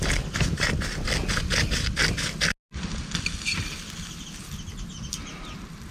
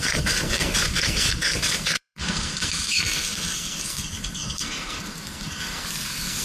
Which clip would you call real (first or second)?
first